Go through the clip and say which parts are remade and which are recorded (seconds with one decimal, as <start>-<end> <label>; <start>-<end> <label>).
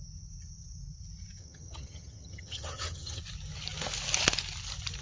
0.0-1.4 recorded; 1.4-3.2 remade; 3.2-5.0 recorded